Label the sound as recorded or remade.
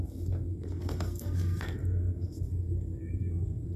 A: remade